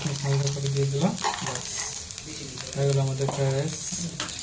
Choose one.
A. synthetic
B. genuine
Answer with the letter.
B